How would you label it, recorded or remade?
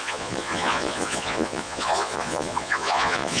remade